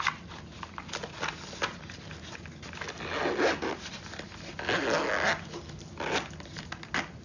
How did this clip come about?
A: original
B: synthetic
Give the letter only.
A